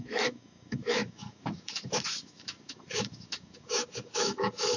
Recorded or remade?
remade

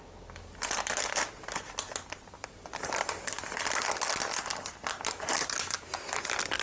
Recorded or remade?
recorded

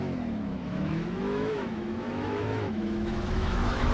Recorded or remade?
remade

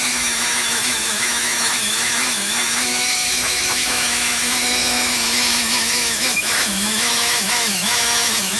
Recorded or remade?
remade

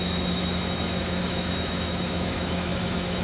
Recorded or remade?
remade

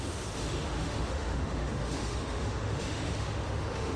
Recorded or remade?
remade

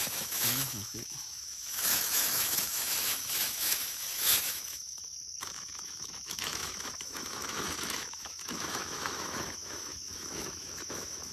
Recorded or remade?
remade